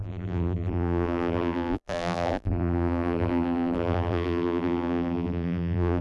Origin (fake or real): fake